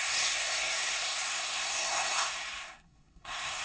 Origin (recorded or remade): remade